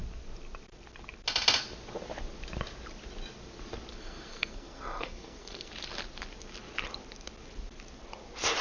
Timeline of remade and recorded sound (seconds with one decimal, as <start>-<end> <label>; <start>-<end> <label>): 0.0-3.9 recorded; 3.9-5.7 remade; 5.7-8.6 recorded